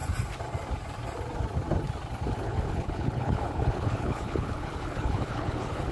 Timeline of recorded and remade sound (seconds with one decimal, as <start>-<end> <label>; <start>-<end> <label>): 0.0-2.4 recorded; 2.4-5.9 remade